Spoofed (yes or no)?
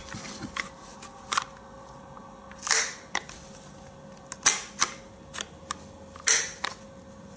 no